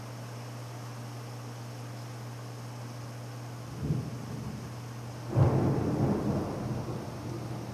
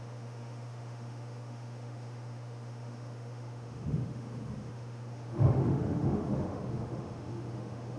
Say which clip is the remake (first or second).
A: second